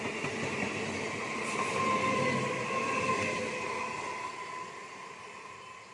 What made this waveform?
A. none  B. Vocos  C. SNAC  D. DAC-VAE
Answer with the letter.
A